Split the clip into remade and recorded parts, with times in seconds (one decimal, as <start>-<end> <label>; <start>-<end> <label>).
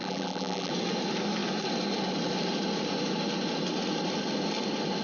0.0-0.7 remade; 0.7-5.0 recorded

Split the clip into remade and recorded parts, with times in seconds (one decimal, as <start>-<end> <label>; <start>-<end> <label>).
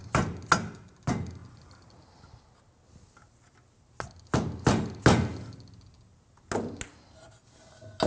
0.0-8.1 recorded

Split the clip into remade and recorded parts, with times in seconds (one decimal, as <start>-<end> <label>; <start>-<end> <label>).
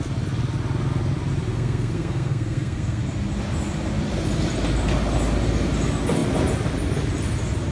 0.0-1.5 recorded; 1.5-3.0 remade; 3.0-7.7 recorded